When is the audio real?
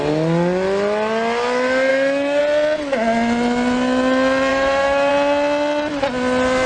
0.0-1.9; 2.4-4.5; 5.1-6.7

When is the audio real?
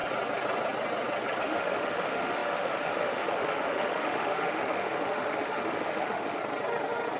0.0-1.4; 6.4-7.2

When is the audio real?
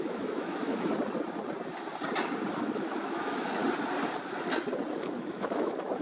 0.9-2.5; 3.6-4.9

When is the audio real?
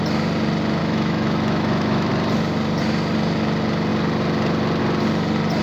0.0-0.8; 2.1-5.6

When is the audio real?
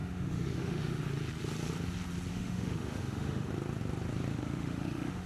1.0-2.3; 3.5-4.3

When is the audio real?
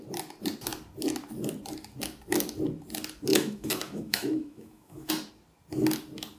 0.0-3.3; 5.1-6.4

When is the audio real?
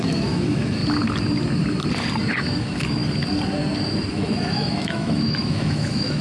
0.8-2.6; 3.0-4.1